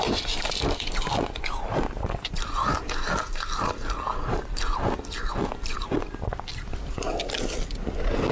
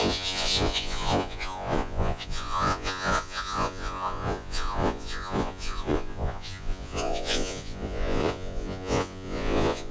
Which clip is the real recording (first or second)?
first